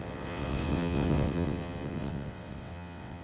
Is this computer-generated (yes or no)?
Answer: yes